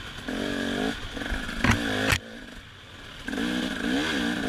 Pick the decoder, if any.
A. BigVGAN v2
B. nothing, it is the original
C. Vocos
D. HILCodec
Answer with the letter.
B